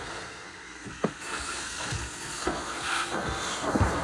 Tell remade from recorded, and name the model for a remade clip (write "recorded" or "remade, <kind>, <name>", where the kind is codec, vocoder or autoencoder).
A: remade, codec, SNAC